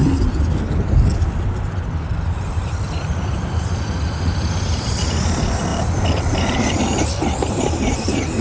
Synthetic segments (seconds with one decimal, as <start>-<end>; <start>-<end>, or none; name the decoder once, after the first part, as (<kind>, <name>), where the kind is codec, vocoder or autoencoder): 5.7-7.1 (vocoder, BigVGAN v2)